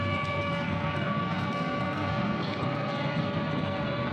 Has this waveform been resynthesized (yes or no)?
yes